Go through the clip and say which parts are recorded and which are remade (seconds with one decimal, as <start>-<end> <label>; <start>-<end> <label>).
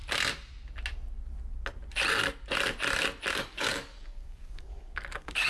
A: 0.0-3.3 recorded; 3.3-5.5 remade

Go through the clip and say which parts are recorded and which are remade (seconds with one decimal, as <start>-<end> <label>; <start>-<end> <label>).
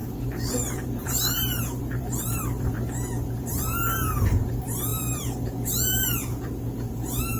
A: 0.0-7.4 remade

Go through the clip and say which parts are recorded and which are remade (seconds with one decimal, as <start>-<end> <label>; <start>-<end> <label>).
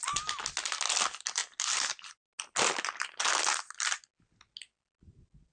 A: 0.0-5.5 recorded